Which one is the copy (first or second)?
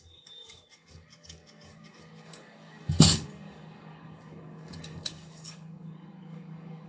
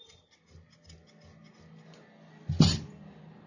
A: first